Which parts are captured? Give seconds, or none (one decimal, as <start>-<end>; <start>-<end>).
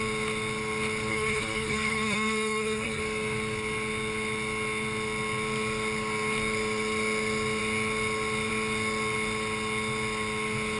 0.0-1.1; 3.0-10.8